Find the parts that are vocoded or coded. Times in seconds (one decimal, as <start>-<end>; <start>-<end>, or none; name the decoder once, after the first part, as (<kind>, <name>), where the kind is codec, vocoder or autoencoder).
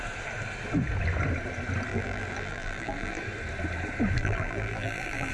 1.9-3.2 (vocoder, BigVGAN v2); 4.2-5.3